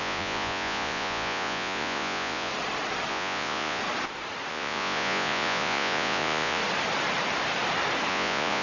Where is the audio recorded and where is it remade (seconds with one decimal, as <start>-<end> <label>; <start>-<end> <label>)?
0.0-2.5 remade; 2.5-3.1 recorded; 3.1-3.8 remade; 3.8-4.5 recorded; 4.5-6.6 remade; 6.6-8.1 recorded; 8.1-8.6 remade